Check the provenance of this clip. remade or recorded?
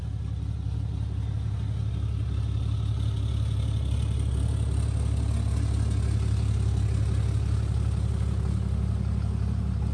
recorded